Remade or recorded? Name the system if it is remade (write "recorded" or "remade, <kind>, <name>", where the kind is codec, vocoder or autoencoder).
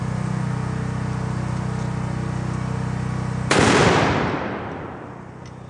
recorded